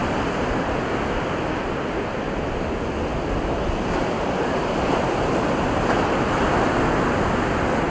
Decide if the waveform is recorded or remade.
recorded